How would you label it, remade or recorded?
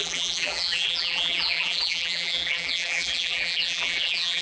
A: remade